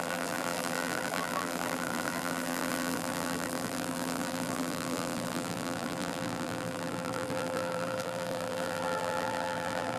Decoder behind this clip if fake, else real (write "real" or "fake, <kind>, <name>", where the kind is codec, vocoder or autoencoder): fake, vocoder, BigVGAN v2